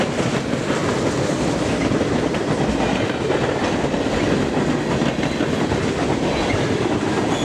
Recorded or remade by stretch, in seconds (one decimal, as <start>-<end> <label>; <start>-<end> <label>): 0.0-7.4 recorded